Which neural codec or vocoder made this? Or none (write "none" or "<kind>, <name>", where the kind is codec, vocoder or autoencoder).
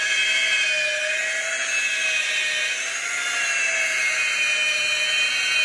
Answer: none